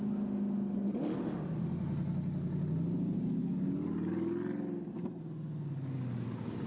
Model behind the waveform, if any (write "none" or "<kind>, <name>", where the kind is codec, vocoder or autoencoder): none